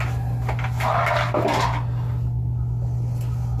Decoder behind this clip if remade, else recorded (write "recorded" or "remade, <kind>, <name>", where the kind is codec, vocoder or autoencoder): recorded